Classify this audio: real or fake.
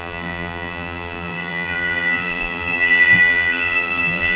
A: fake